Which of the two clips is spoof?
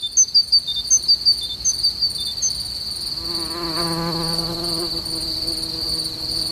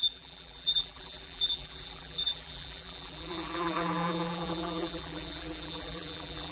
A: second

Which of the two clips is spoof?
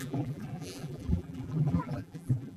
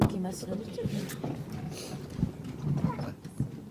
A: first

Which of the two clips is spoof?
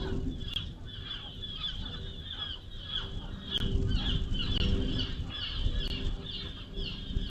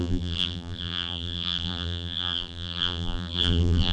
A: second